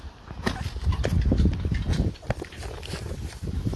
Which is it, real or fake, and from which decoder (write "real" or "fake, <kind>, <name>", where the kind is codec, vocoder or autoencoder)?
real